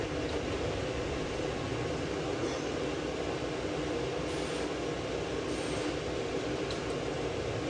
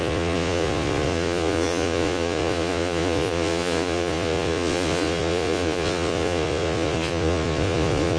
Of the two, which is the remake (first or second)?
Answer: second